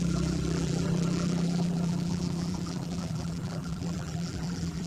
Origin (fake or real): fake